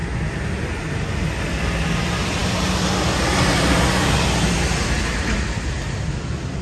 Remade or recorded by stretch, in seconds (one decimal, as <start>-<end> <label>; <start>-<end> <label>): 0.0-6.6 recorded